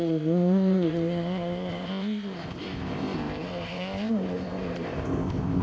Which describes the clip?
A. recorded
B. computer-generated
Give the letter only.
B